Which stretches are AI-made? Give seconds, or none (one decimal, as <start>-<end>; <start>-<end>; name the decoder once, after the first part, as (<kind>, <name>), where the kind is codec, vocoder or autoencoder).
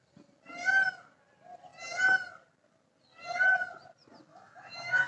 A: 4.3-5.1 (autoencoder, DAC-VAE)